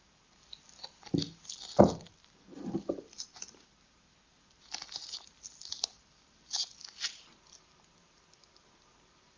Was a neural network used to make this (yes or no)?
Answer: no